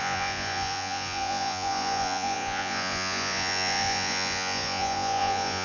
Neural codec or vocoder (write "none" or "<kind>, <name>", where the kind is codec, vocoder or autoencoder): vocoder, Vocos